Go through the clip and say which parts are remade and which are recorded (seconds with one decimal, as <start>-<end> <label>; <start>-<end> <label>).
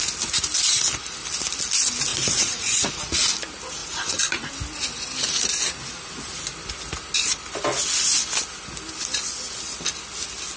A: 0.0-2.1 recorded; 2.1-2.9 remade; 2.9-3.8 recorded; 3.8-4.5 remade; 4.5-10.6 recorded